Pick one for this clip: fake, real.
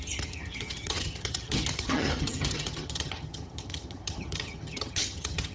fake